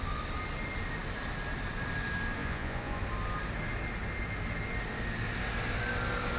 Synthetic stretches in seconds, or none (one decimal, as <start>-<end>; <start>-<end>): 2.4-3.0